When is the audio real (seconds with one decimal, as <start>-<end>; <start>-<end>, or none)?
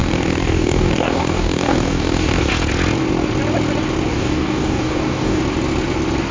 2.5-4.1; 5.4-6.3